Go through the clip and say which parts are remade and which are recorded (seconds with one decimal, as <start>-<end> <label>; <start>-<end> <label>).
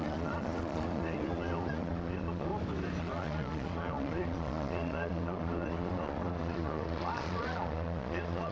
0.0-2.5 remade; 2.5-3.0 recorded; 3.0-8.5 remade